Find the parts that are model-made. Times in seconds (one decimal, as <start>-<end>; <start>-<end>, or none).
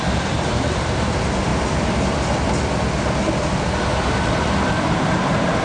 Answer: 0.0-1.5; 4.7-5.6